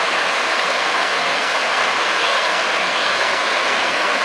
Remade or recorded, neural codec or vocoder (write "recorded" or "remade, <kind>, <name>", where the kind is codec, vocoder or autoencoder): remade, codec, SNAC